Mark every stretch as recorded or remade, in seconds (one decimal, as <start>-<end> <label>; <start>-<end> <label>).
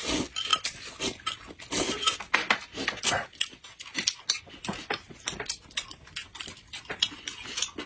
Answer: 0.0-7.9 recorded